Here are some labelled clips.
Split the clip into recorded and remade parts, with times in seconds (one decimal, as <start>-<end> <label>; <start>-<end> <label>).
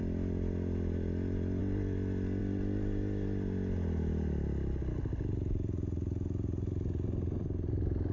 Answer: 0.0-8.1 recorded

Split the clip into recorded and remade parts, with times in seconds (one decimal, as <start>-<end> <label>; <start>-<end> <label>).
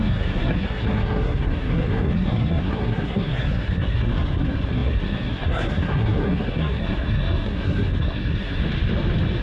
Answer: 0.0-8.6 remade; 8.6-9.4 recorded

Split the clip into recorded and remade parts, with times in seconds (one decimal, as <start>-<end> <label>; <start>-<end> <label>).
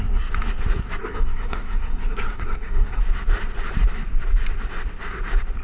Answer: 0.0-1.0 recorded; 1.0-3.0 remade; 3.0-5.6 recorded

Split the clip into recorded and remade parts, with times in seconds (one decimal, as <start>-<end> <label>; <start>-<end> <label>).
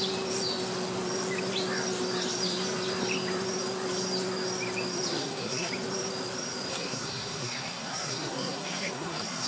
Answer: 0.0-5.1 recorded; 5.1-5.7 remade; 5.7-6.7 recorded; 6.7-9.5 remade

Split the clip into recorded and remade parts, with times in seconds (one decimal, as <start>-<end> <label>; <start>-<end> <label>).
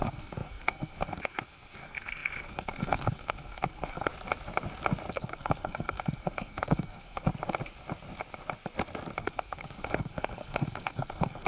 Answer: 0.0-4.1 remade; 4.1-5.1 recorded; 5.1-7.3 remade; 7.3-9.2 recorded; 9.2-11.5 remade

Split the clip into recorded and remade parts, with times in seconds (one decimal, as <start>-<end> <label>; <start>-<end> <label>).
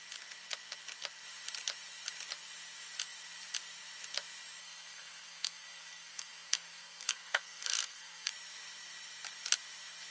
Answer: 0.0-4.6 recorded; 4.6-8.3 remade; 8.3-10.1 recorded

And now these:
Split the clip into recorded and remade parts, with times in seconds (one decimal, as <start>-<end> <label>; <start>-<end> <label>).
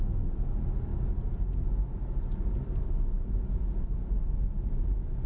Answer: 0.0-5.3 recorded